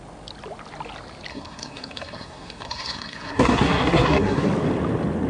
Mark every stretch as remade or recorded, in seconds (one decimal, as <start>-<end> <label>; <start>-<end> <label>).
0.0-1.3 recorded; 1.3-4.5 remade; 4.5-5.3 recorded